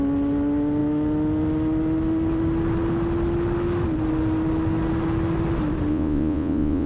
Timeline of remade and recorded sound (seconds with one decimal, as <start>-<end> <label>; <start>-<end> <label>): 0.0-5.9 recorded; 5.9-6.9 remade